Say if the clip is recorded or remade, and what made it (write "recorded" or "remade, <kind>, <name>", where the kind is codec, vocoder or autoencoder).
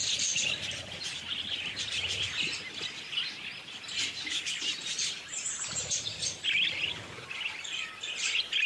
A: recorded